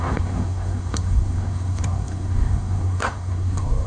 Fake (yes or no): yes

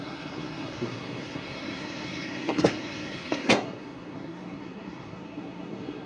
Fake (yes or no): yes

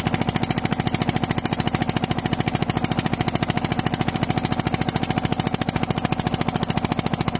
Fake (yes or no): no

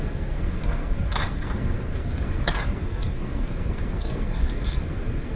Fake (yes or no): yes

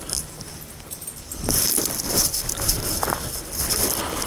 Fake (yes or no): no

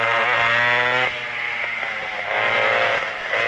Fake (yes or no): no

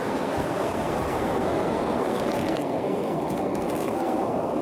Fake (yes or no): yes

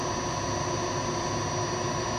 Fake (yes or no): no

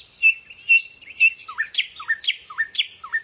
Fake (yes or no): no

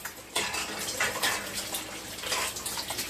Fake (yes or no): no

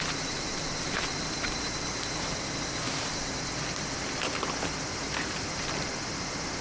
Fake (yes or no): no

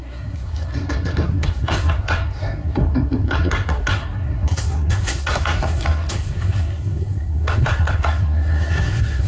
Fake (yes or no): yes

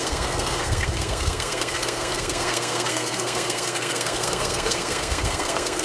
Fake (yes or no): yes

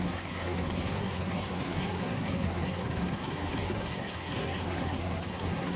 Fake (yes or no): yes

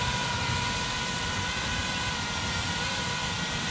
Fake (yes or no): no